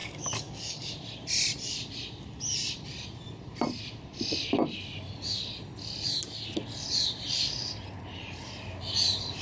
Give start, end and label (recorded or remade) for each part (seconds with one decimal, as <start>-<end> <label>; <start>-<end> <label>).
0.0-0.9 remade; 0.9-9.4 recorded